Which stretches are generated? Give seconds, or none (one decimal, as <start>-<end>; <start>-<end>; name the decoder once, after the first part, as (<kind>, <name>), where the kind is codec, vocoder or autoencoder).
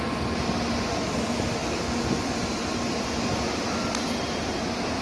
1.6-4.6 (vocoder, BigVGAN v2)